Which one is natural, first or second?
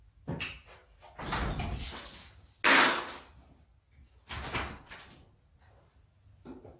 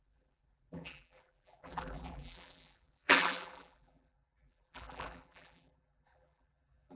first